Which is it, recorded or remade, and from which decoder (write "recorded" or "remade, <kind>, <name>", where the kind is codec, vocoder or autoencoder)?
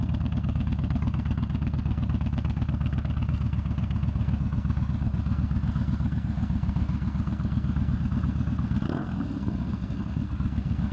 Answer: remade, codec, SNAC